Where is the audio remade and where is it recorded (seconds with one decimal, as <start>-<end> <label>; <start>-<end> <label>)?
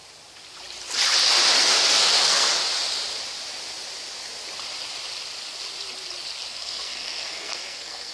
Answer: 0.0-1.6 recorded; 1.6-2.5 remade; 2.5-6.5 recorded; 6.5-8.1 remade